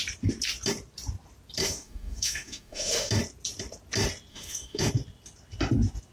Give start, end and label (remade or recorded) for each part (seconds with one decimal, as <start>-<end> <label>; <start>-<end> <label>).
0.0-1.6 recorded; 1.6-3.1 remade; 3.1-4.3 recorded; 4.3-4.9 remade; 4.9-6.1 recorded